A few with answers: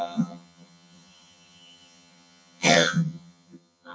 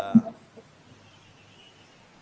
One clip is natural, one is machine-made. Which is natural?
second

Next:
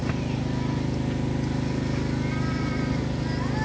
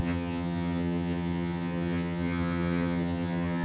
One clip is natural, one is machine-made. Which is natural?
first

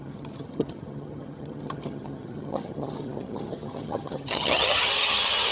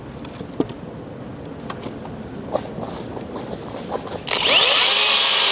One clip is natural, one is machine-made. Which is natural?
second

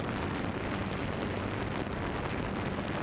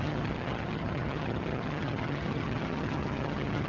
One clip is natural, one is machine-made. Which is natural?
first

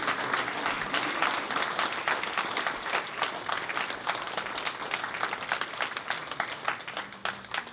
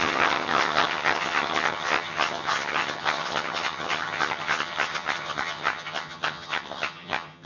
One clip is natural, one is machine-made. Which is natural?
first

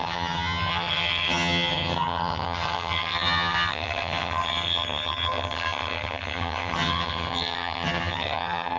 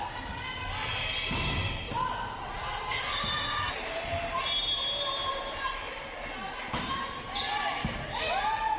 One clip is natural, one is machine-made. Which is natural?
second